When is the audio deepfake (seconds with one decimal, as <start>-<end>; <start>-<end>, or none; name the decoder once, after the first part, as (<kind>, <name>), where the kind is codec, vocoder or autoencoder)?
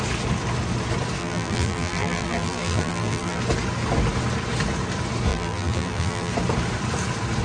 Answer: 1.2-3.4 (vocoder, BigVGAN v2); 5.3-6.3